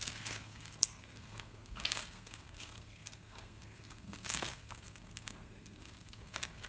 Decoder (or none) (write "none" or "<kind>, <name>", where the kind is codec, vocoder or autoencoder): codec, SNAC